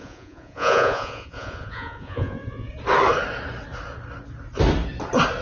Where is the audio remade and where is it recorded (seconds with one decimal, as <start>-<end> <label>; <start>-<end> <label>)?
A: 0.0-2.7 remade; 2.7-5.4 recorded